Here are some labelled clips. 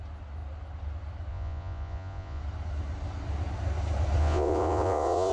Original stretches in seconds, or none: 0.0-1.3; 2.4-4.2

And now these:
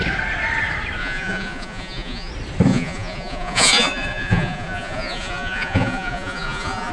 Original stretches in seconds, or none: 0.0-1.0; 2.3-2.7

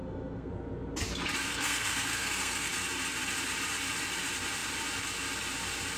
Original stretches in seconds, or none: 0.5-1.5; 2.7-6.0

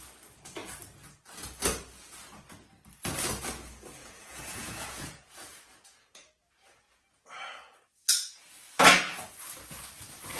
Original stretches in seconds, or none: 0.0-4.0; 8.4-10.4